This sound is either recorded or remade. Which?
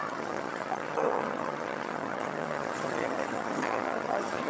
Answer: remade